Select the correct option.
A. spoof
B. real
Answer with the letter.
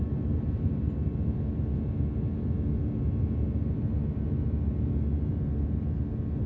B